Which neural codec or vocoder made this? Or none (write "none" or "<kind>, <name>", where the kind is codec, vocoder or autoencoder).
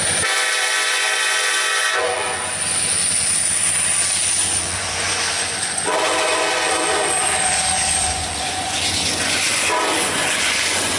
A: vocoder, Vocos